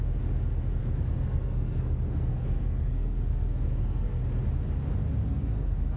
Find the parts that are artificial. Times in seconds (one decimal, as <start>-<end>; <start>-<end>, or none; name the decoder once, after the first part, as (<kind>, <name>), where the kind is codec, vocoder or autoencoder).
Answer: 0.8-4.2 (codec, SNAC); 5.2-6.0